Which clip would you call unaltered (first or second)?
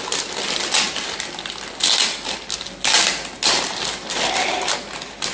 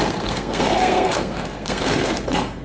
first